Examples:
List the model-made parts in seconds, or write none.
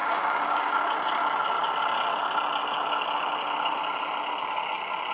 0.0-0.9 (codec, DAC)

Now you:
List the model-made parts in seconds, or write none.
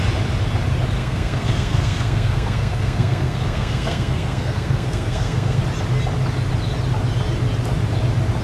1.0-5.6 (codec, SNAC)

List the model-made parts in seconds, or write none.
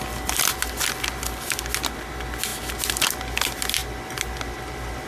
none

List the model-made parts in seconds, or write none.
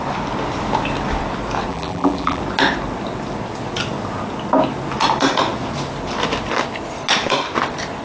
1.7-2.4 (vocoder, BigVGAN v2)